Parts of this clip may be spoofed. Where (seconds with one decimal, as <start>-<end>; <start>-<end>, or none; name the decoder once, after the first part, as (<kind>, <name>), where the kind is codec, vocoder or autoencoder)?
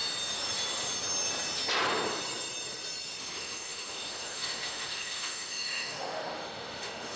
3.2-7.2 (autoencoder, DAC-VAE)